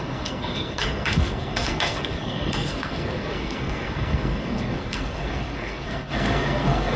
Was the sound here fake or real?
fake